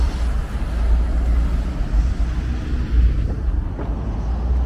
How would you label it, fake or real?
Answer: real